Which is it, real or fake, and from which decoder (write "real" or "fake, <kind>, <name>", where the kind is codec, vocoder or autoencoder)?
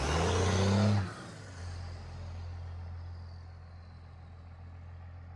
real